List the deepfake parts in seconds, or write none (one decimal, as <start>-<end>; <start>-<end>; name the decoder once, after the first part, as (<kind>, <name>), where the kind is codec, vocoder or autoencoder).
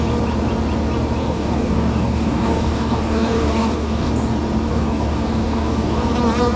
1.2-4.1 (codec, DAC); 4.7-6.1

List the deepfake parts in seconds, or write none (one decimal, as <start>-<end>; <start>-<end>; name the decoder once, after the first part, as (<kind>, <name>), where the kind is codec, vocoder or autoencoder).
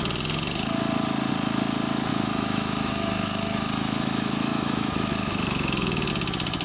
2.1-6.1 (autoencoder, DAC-VAE)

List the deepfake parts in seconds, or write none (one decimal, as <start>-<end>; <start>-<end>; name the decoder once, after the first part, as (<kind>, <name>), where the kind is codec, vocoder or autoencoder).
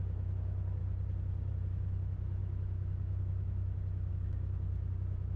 0.0-0.8 (autoencoder, DAC-VAE); 1.5-5.4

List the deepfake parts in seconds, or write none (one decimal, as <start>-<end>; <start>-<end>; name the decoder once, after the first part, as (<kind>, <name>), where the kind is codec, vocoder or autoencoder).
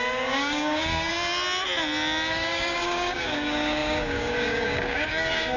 0.0-1.1 (codec, DAC); 2.3-5.6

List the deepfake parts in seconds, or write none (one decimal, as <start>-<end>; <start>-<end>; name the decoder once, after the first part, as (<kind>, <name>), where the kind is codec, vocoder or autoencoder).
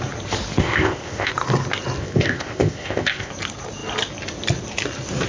0.6-1.3 (codec, ZipCodec); 2.0-3.3